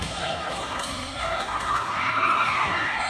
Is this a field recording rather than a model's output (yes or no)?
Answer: no